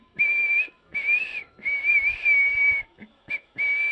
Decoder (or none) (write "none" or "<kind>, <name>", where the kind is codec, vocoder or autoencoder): autoencoder, DAC-VAE